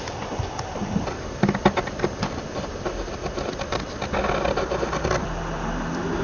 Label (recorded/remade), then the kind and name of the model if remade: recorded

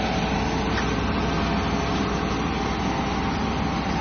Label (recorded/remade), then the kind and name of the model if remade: recorded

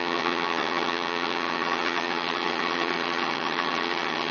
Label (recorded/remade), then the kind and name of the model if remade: remade, vocoder, HiFi-GAN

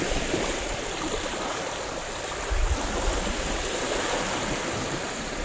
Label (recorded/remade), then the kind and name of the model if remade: remade, vocoder, BigVGAN v2